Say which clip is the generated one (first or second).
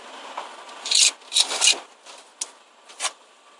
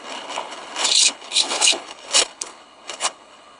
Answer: second